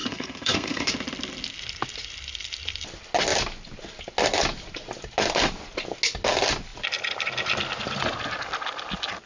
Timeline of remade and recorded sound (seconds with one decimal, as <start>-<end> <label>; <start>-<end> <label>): 0.0-0.9 remade; 0.9-9.3 recorded